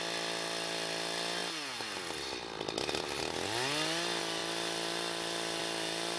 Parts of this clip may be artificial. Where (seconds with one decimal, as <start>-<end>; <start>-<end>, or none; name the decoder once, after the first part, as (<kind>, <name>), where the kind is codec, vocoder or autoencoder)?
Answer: none